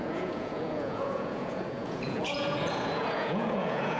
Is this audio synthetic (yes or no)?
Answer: yes